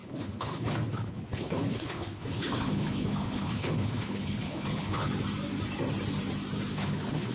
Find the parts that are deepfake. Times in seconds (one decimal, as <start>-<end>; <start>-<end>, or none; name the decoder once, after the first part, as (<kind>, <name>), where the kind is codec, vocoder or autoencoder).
0.0-5.1 (codec, HILCodec); 6.7-7.3